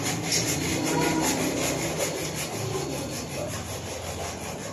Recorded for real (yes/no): yes